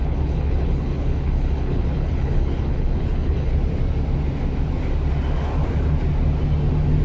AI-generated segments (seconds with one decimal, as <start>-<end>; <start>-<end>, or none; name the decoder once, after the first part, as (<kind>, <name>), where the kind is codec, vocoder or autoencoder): 0.0-3.5 (codec, HILCodec)